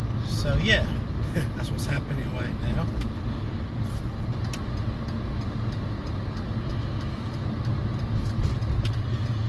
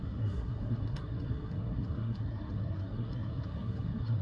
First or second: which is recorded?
first